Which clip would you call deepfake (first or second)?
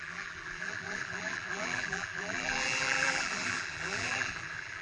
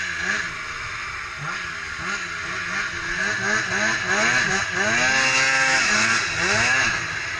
first